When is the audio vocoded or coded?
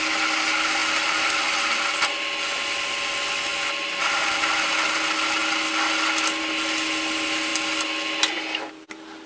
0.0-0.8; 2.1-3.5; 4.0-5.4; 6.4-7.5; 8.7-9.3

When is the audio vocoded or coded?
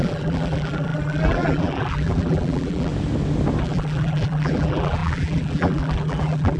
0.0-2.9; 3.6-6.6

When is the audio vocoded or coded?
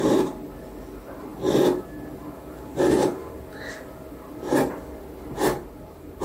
5.5-6.2